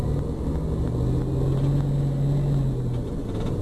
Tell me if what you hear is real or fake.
real